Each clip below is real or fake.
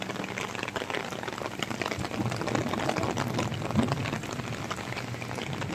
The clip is real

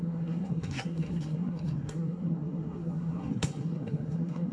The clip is fake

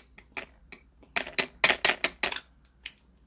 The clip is real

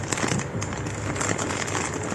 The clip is real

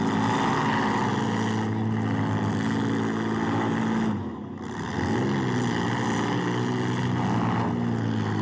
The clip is real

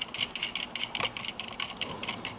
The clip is real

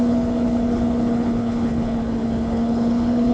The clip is fake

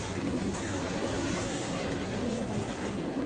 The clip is fake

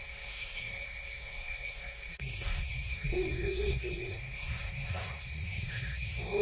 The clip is fake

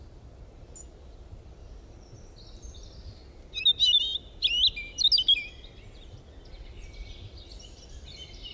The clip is real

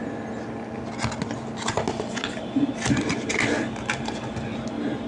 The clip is real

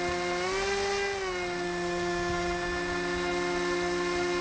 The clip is real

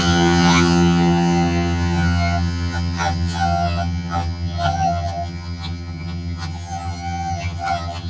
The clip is fake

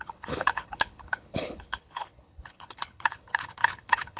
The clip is fake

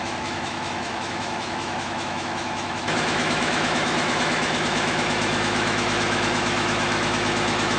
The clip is fake